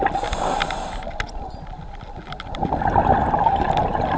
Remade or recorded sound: recorded